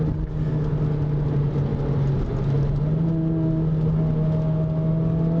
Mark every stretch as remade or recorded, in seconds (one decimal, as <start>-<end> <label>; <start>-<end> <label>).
0.0-5.4 recorded